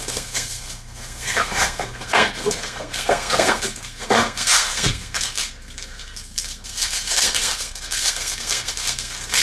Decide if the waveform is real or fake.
fake